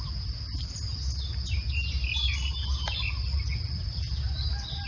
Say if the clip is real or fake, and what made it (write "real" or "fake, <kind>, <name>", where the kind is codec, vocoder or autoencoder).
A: real